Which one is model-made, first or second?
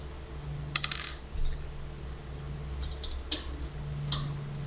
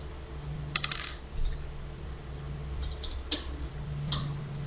second